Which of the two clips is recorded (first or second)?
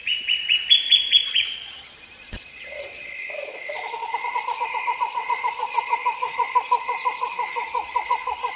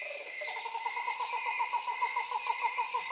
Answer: second